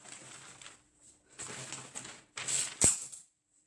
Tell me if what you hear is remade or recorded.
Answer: recorded